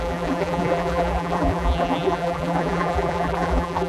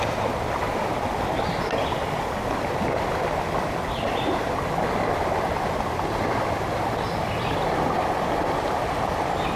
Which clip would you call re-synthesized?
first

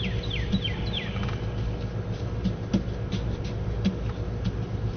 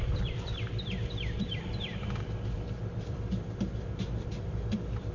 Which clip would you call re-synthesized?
second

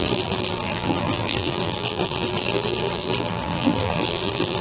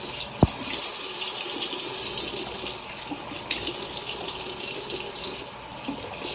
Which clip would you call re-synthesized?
first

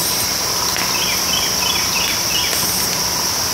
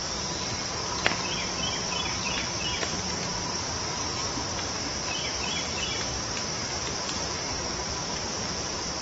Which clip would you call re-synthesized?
second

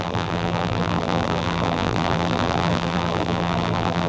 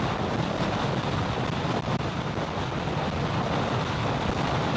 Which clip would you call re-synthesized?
first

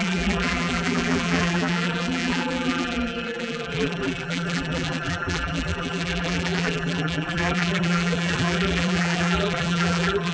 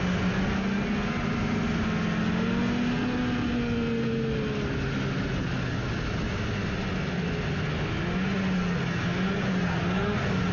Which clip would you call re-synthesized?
first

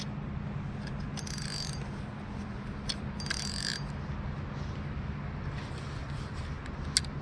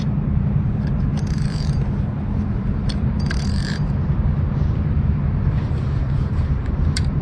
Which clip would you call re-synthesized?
second